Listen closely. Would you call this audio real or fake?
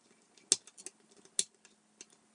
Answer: real